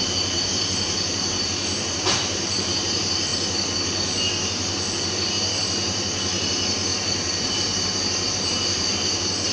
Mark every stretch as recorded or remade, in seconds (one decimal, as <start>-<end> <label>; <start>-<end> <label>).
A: 0.0-3.3 remade; 3.3-5.1 recorded; 5.1-9.5 remade